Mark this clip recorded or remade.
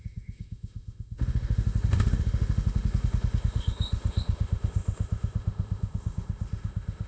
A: remade